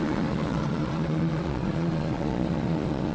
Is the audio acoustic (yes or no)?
no